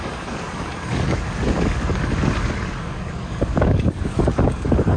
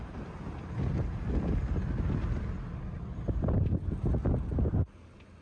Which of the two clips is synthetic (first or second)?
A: first